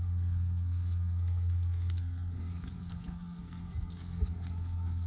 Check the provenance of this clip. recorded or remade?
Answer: remade